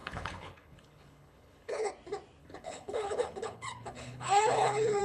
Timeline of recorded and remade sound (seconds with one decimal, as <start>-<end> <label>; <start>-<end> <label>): 0.0-1.9 remade; 1.9-2.4 recorded; 2.4-5.0 remade